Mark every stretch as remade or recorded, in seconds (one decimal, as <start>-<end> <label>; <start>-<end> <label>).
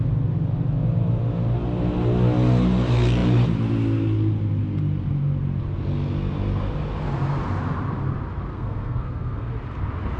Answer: 0.0-8.5 recorded; 8.5-9.5 remade; 9.5-10.2 recorded